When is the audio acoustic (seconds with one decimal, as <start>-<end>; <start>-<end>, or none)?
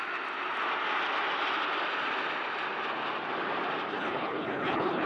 0.0-3.9